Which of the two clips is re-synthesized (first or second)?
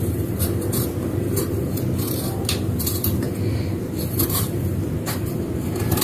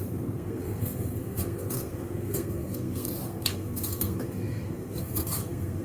second